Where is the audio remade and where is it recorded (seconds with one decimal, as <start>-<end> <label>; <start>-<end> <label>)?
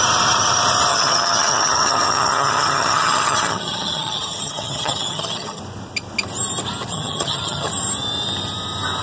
0.0-0.9 recorded; 0.9-5.6 remade; 5.6-6.9 recorded; 6.9-7.7 remade; 7.7-9.0 recorded